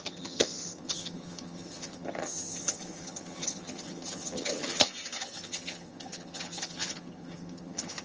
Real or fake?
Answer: fake